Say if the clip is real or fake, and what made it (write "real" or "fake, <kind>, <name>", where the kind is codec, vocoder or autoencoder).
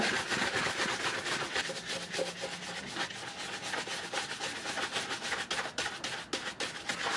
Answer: real